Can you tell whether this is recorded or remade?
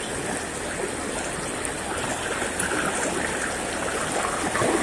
recorded